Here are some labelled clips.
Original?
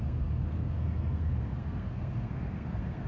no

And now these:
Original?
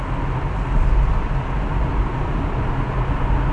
yes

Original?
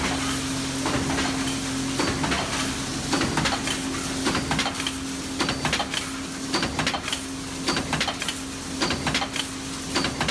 yes